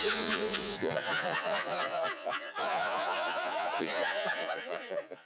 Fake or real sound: fake